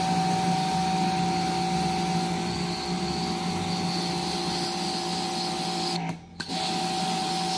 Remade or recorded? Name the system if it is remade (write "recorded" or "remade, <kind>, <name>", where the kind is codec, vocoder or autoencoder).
recorded